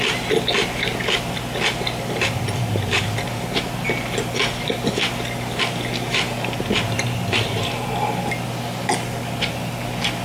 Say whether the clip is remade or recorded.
recorded